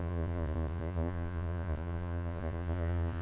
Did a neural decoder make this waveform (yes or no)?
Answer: yes